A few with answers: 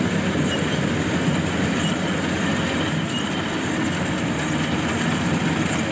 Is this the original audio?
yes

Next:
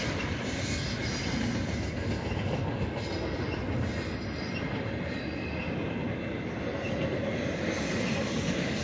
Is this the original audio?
yes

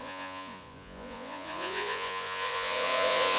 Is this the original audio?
no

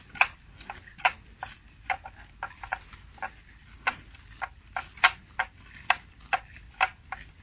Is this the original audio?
yes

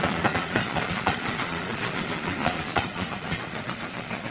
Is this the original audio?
no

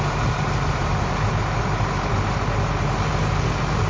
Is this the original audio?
yes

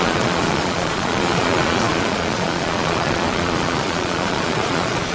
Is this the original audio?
no